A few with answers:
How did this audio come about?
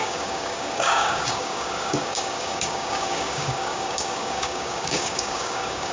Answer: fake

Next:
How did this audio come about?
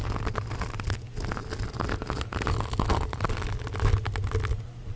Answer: real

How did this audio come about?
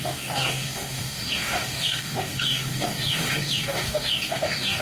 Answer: fake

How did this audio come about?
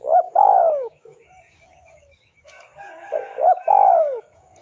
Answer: fake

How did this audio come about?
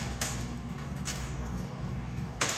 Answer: fake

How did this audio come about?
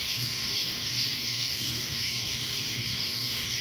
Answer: fake